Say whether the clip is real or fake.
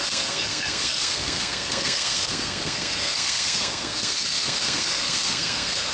fake